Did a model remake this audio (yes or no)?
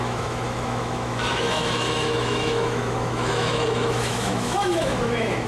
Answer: yes